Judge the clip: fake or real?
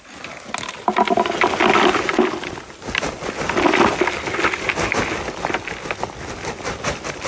real